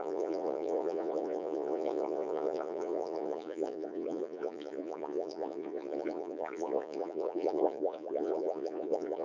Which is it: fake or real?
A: fake